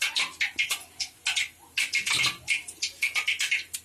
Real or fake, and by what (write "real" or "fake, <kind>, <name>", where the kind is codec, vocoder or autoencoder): real